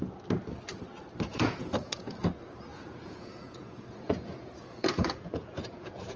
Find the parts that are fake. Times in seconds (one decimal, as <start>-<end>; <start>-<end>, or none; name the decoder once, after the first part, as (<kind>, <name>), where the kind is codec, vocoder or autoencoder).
1.3-2.2 (vocoder, Vocos); 2.7-6.2